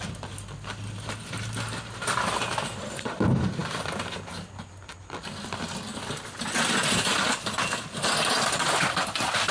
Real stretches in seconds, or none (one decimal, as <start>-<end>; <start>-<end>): 0.0-9.5